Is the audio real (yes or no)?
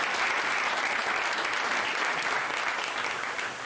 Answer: yes